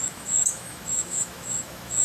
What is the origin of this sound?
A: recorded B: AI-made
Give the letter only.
B